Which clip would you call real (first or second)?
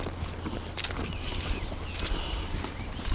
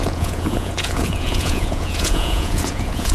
first